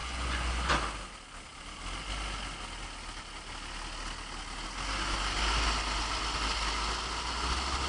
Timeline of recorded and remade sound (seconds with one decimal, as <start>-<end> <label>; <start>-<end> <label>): 0.0-0.7 remade; 0.7-7.9 recorded